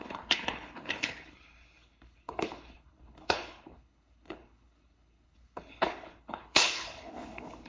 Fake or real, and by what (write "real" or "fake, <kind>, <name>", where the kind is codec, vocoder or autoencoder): fake, codec, HILCodec